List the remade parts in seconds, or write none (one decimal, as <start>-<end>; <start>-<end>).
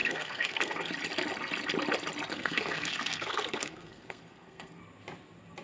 0.0-0.9; 2.3-4.8